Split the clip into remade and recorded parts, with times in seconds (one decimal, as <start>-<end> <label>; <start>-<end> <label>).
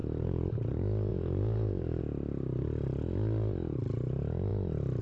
0.0-0.5 remade; 0.5-1.1 recorded; 1.1-2.0 remade; 2.0-5.0 recorded